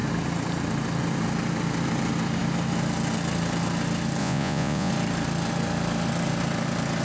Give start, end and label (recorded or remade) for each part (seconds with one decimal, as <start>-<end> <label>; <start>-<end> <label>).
0.0-4.2 recorded; 4.2-4.9 remade; 4.9-7.0 recorded